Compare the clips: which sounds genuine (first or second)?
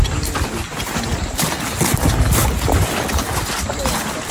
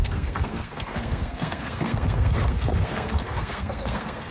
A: first